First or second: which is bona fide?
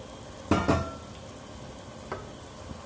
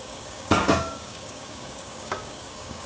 first